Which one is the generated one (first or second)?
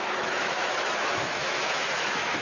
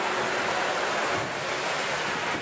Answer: first